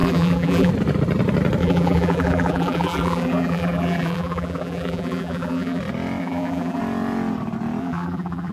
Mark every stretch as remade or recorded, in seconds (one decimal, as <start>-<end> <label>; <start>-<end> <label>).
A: 0.0-0.7 remade; 0.7-1.6 recorded; 1.6-5.8 remade; 5.8-6.2 recorded; 6.2-6.8 remade; 6.8-7.8 recorded; 7.8-8.5 remade